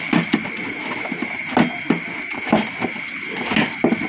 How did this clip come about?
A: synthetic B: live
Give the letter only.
B